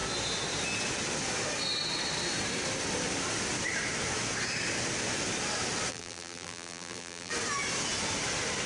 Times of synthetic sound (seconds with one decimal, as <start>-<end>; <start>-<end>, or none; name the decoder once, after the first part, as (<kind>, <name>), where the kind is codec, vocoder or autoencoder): 5.9-7.3 (vocoder, BigVGAN v2)